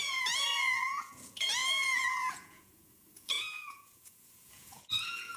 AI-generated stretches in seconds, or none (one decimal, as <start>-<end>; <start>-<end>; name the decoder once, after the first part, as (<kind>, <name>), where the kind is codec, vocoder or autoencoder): 0.0-5.4 (vocoder, Vocos)